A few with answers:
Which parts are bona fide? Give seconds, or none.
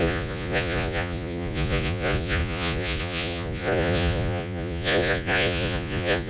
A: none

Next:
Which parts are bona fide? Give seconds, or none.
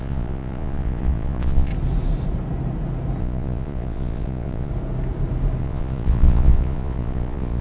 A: 1.7-3.2; 4.7-5.6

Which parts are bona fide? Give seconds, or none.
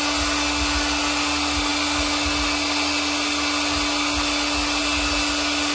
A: 0.0-5.7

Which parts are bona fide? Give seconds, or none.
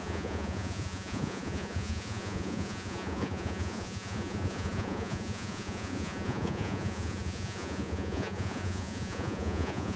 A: none